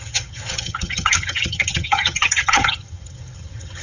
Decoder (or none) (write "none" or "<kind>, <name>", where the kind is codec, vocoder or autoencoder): vocoder, HiFi-GAN